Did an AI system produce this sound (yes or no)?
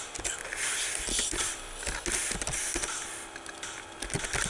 no